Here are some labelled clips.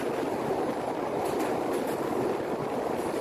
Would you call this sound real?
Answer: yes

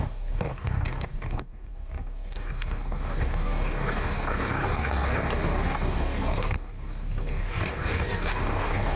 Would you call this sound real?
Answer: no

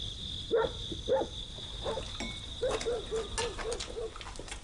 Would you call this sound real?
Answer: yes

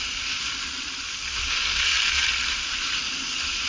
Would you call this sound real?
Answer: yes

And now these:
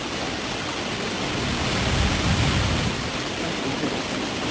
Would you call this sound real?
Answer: yes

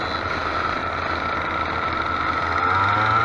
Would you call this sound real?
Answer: yes